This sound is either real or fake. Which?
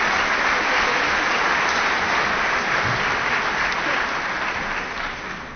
real